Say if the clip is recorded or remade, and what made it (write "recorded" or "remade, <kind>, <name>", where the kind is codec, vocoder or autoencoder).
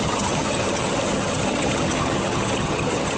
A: remade, vocoder, HiFi-GAN